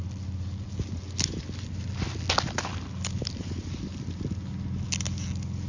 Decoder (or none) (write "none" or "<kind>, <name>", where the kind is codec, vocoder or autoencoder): none